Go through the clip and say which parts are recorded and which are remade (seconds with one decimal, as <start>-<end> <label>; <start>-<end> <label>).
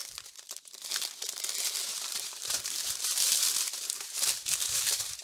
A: 0.0-0.8 remade; 0.8-1.9 recorded; 1.9-5.2 remade